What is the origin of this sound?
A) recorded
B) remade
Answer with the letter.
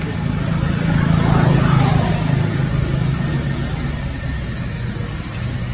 A